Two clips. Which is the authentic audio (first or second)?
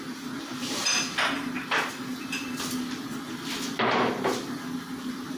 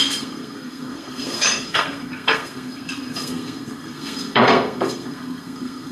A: first